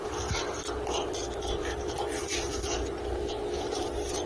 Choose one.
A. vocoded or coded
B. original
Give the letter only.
A